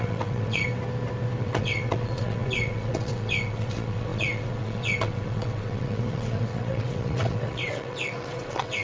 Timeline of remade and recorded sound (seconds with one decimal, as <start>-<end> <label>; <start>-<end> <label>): 0.0-0.7 remade; 0.7-1.4 recorded; 1.4-8.8 remade